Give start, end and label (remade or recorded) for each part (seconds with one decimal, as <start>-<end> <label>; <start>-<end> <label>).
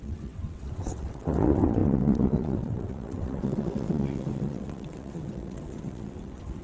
0.0-6.6 remade